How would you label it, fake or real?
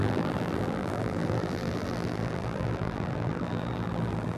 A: fake